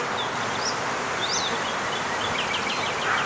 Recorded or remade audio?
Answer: recorded